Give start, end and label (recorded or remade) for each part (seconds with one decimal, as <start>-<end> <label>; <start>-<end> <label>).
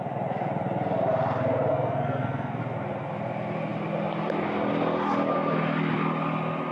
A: 0.0-1.7 recorded; 1.7-2.6 remade; 2.6-6.7 recorded